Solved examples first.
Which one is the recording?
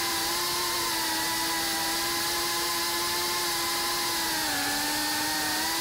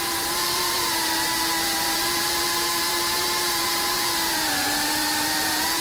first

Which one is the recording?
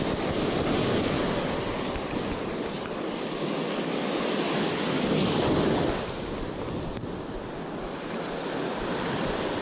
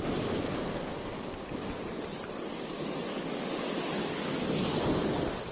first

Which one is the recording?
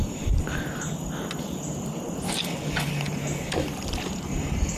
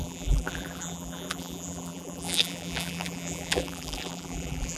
first